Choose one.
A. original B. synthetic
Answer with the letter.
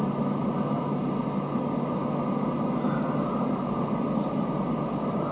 A